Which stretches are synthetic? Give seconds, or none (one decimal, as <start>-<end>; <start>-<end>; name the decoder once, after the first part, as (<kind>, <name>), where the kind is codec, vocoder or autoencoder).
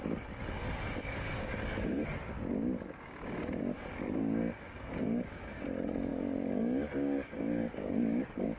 1.0-2.0 (codec, DAC); 3.6-8.6